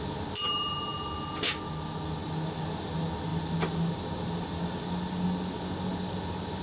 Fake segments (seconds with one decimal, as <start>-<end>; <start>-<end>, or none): none